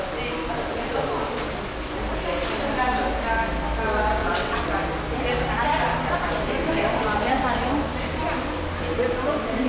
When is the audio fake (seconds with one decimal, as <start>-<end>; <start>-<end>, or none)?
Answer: 4.2-4.7